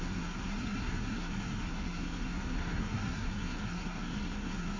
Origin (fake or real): fake